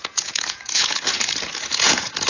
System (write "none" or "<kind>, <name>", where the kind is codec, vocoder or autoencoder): vocoder, Vocos